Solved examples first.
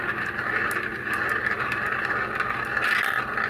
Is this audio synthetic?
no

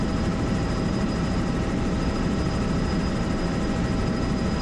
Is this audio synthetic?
yes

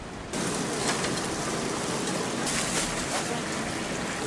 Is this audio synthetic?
no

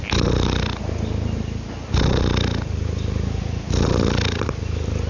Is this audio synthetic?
no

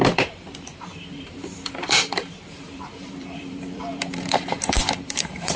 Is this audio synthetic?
yes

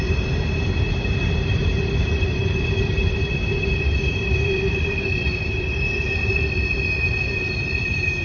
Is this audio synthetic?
yes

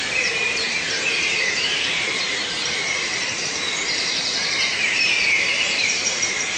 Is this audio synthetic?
yes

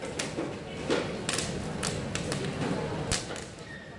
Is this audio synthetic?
no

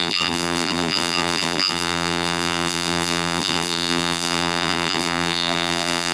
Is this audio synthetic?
yes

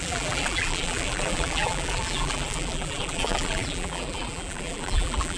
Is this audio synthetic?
yes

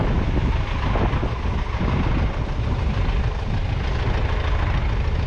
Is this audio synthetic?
no